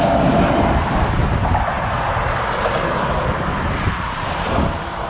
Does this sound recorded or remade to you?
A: recorded